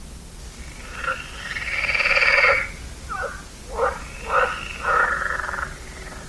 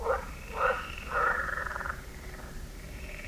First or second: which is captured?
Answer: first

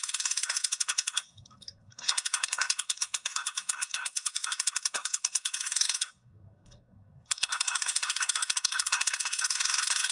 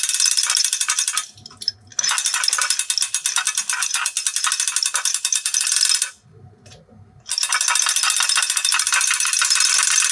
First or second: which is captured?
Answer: second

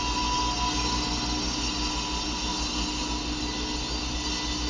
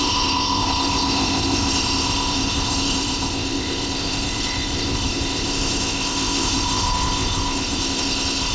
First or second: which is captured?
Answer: first